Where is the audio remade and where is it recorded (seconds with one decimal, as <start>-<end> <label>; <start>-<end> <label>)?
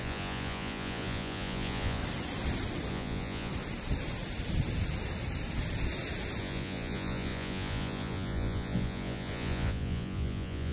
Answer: 0.0-2.0 remade; 2.0-2.9 recorded; 2.9-3.5 remade; 3.5-6.4 recorded; 6.4-10.7 remade